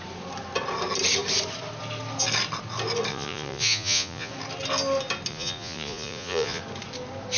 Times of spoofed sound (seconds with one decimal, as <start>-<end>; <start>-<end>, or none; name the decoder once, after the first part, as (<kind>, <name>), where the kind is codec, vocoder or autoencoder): 3.1-4.3 (vocoder, Vocos); 5.3-6.6